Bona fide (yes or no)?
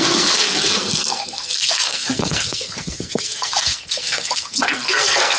no